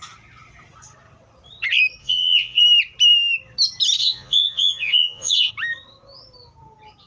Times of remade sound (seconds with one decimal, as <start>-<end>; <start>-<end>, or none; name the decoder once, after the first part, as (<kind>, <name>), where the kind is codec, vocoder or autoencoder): 2.0-2.6 (vocoder, Vocos); 4.0-5.5